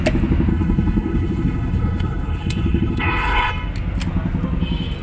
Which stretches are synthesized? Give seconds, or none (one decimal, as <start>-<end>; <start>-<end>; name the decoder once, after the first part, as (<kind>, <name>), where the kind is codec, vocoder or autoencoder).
0.5-3.5 (codec, HILCodec)